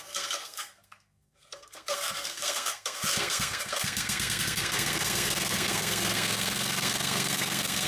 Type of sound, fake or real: fake